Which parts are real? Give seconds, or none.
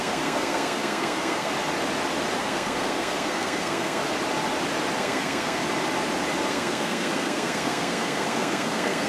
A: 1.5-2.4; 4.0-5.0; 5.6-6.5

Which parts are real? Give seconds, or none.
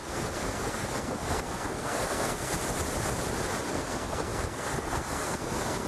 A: 2.6-3.7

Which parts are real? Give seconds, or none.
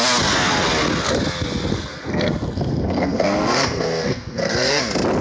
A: 0.0-1.7; 4.8-5.2